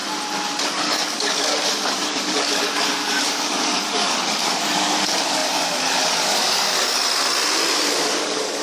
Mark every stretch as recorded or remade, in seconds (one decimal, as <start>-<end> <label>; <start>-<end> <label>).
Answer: 0.0-0.6 recorded; 0.6-7.0 remade; 7.0-8.0 recorded; 8.0-8.6 remade